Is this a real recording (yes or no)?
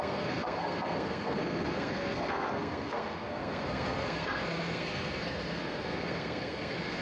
no